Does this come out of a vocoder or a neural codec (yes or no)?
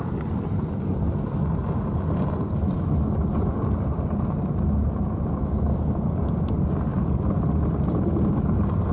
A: no